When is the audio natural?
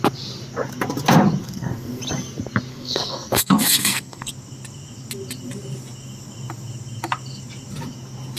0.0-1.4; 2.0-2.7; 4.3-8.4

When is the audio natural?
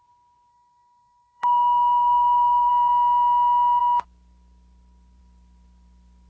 0.0-0.5; 2.7-6.3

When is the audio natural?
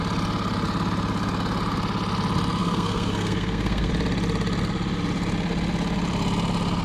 0.0-2.6; 3.9-6.8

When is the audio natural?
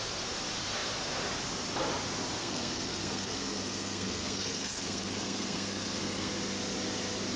0.0-2.4; 6.3-7.4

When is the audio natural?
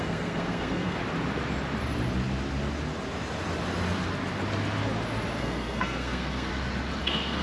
1.0-5.4; 6.5-7.0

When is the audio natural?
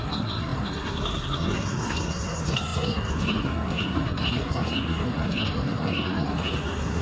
none